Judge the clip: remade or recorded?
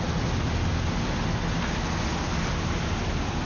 recorded